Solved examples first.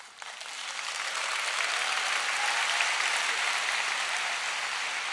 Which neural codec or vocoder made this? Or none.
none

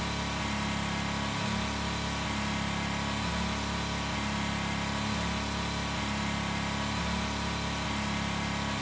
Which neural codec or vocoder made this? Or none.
none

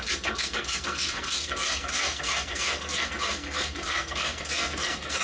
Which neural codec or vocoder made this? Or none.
codec, SNAC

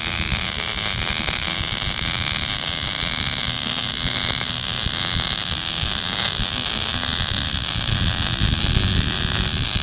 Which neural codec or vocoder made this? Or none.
none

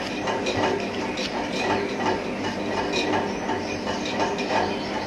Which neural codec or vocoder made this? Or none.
none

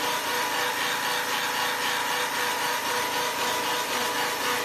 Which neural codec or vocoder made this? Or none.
none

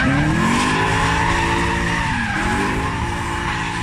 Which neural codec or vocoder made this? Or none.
none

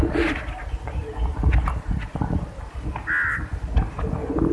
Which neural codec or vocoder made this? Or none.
none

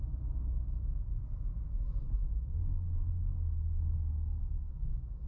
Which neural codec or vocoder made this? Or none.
none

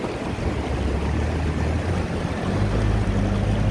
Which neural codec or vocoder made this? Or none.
none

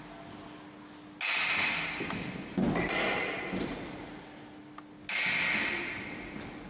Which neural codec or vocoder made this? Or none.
none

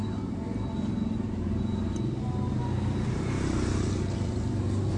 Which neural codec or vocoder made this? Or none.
none